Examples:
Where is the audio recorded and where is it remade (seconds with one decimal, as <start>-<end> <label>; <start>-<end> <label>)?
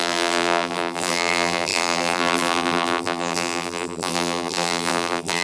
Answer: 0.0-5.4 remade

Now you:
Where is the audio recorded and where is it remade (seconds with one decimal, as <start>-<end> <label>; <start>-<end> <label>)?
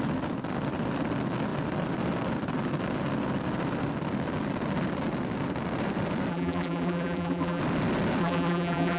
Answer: 0.0-6.3 recorded; 6.3-7.6 remade; 7.6-8.2 recorded; 8.2-9.0 remade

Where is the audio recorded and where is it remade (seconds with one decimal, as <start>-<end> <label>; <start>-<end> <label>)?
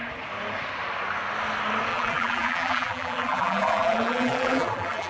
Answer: 0.0-1.9 recorded; 1.9-5.1 remade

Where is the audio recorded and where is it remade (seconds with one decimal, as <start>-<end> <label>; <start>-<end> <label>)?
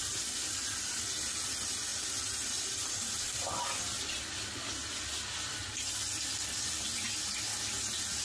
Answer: 0.0-1.9 recorded; 1.9-3.6 remade; 3.6-4.8 recorded; 4.8-6.2 remade; 6.2-8.2 recorded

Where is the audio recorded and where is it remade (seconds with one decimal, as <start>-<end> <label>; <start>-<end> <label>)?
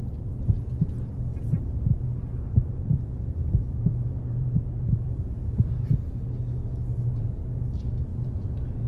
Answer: 0.0-1.3 recorded; 1.3-5.7 remade; 5.7-6.9 recorded; 6.9-7.6 remade; 7.6-8.1 recorded; 8.1-8.9 remade